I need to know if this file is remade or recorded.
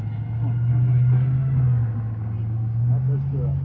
recorded